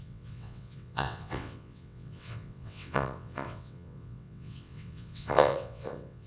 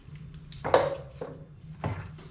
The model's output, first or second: first